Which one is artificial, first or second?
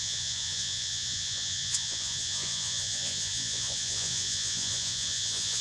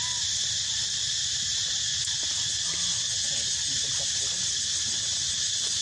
first